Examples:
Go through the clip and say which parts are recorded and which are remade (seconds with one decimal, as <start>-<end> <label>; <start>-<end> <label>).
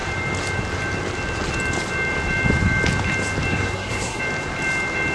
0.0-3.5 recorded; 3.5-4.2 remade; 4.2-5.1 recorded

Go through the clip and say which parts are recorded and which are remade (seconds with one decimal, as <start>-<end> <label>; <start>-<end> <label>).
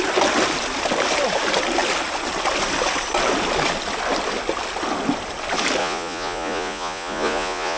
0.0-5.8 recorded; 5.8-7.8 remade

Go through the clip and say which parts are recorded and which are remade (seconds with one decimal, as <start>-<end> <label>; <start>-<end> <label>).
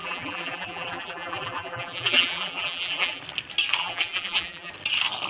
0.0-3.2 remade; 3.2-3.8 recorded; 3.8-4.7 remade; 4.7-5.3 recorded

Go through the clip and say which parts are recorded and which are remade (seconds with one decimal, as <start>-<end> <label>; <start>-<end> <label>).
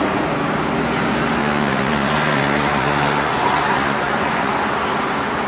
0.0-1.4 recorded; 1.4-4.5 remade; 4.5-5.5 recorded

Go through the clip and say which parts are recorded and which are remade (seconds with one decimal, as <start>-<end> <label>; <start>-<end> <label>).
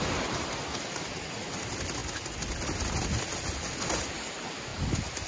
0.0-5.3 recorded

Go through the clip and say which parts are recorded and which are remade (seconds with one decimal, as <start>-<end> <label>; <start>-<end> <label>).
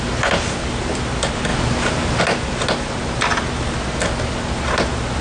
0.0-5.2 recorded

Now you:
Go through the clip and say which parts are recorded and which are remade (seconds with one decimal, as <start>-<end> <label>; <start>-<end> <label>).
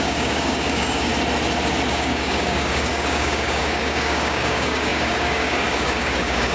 0.0-1.1 remade; 1.1-1.9 recorded; 1.9-6.5 remade